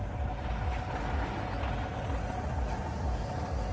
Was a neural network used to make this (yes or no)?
no